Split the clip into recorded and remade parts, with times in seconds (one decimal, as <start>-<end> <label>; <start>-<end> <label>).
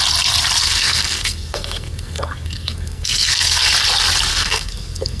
0.0-0.6 recorded; 0.6-3.7 remade; 3.7-4.3 recorded; 4.3-5.2 remade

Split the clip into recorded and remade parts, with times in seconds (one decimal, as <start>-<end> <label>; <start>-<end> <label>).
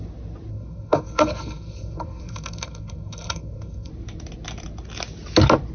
0.0-0.5 recorded; 0.5-3.9 remade; 3.9-5.7 recorded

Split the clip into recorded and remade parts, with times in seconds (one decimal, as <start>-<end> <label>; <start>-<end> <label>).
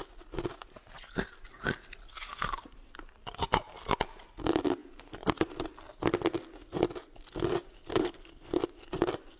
0.0-7.9 recorded; 7.9-8.6 remade; 8.6-9.4 recorded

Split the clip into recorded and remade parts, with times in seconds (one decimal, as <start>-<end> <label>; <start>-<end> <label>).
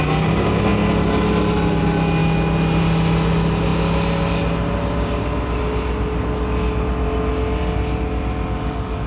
0.0-9.1 recorded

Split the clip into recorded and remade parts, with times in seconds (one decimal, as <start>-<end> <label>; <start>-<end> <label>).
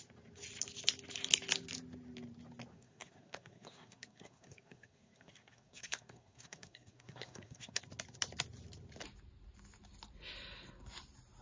0.0-2.7 recorded; 2.7-7.8 remade; 7.8-11.4 recorded